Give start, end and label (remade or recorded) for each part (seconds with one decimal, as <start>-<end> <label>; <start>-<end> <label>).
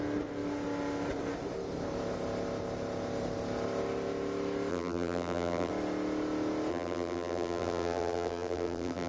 0.0-4.7 recorded; 4.7-5.7 remade; 5.7-6.7 recorded; 6.7-9.1 remade